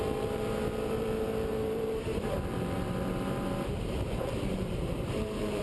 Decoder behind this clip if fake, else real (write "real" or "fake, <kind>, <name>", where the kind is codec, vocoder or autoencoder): fake, vocoder, BigVGAN v2